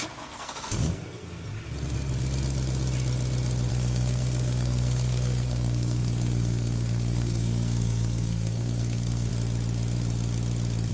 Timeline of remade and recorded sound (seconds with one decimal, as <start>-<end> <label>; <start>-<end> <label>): 0.0-1.5 remade; 1.5-3.7 recorded; 3.7-9.3 remade; 9.3-10.9 recorded